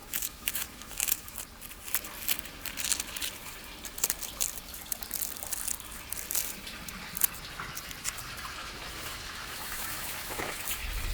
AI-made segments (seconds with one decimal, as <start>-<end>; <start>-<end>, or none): 0.0-1.4; 8.6-10.6